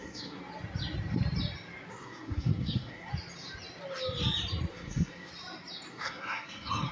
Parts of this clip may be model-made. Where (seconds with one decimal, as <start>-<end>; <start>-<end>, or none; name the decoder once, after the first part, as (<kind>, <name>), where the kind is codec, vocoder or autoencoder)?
0.0-0.4 (codec, SNAC); 1.9-3.1; 4.7-5.3; 5.9-6.9